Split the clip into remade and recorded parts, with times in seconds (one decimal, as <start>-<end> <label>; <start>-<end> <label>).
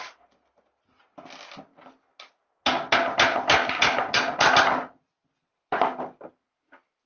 0.0-7.1 recorded